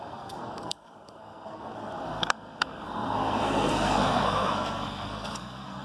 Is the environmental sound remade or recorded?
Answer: remade